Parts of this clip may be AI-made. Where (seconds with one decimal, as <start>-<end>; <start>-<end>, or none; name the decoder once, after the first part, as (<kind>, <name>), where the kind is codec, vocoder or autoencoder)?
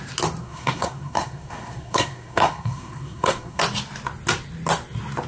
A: 0.4-3.6 (codec, SNAC)